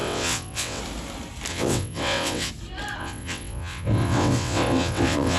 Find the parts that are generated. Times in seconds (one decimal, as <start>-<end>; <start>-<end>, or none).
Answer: 0.0-0.8; 1.5-2.5; 3.0-5.4